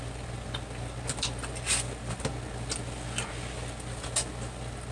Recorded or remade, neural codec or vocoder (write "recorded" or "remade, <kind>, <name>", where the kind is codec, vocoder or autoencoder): recorded